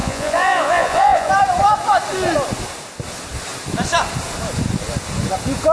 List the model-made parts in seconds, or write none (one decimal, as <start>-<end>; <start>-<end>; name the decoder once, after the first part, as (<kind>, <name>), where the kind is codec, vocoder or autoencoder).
0.0-1.3 (vocoder, Vocos)